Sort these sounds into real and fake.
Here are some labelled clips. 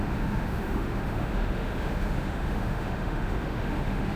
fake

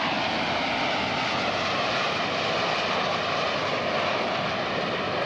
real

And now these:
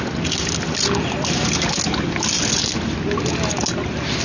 real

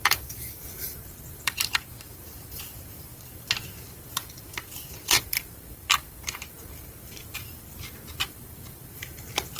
fake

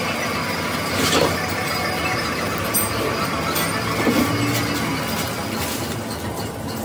real